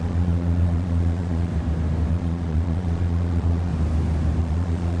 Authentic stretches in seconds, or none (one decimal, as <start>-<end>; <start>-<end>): 1.5-2.1; 3.7-4.4